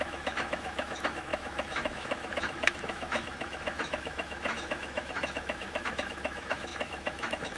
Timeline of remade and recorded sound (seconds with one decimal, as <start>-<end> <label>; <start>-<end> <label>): 0.0-7.6 remade